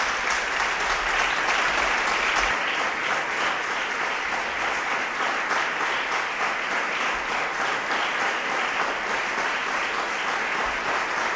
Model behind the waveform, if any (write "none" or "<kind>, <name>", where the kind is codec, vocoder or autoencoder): none